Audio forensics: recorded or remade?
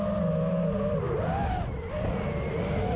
recorded